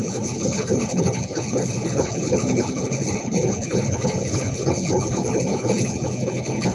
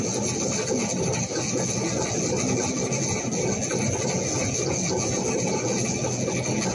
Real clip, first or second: second